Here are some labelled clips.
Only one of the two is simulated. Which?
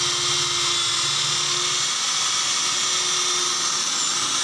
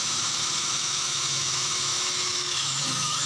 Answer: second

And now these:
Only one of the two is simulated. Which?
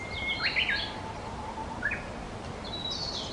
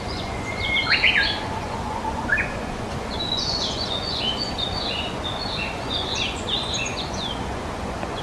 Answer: second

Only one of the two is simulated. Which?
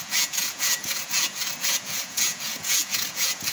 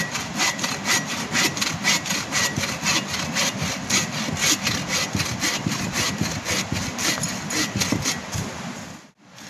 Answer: first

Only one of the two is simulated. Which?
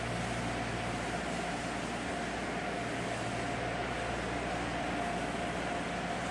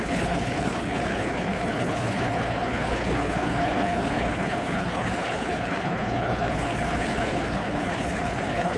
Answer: second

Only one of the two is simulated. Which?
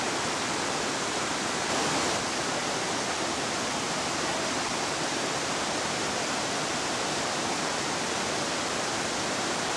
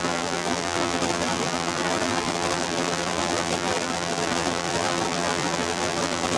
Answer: second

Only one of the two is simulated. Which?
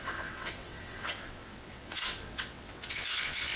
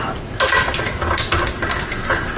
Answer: first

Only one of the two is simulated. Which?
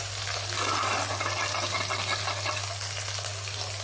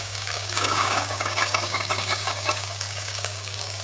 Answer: second